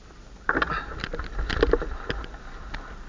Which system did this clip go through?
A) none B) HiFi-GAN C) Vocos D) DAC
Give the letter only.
A